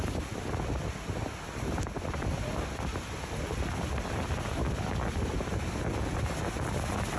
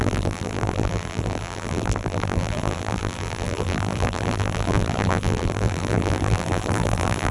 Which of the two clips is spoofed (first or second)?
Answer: second